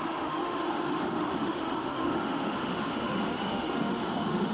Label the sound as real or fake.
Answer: fake